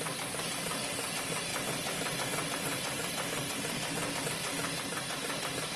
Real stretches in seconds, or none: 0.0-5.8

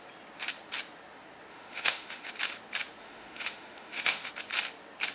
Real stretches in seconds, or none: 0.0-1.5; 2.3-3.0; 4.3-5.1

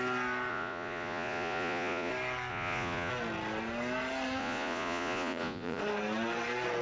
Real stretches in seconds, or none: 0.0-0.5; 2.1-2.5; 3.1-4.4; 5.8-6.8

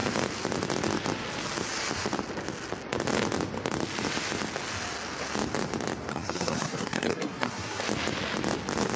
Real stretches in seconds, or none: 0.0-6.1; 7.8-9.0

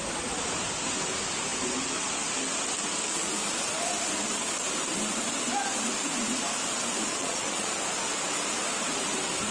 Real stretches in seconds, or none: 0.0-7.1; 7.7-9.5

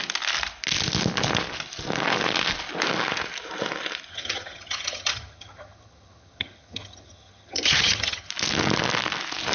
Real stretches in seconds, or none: 0.0-4.1; 8.3-9.5